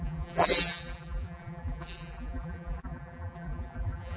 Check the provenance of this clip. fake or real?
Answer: fake